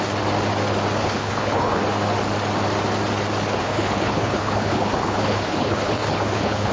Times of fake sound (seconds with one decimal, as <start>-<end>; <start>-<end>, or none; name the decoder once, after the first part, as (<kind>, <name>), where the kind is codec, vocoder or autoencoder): 1.0-1.8 (codec, HILCodec); 3.6-6.7